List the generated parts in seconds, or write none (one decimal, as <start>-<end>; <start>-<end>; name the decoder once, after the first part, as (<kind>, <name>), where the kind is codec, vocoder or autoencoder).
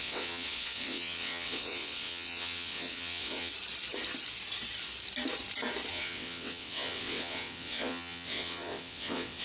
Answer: 0.0-3.5 (vocoder, WaveNeXt); 5.9-9.4